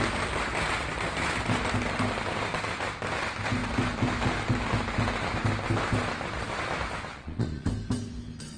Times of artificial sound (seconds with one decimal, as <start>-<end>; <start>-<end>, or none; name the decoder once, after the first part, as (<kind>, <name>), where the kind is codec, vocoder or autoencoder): 7.1-7.7 (vocoder, Vocos)